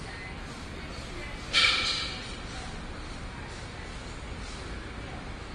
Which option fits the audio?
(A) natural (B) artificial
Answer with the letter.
A